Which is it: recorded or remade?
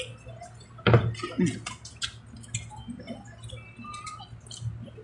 recorded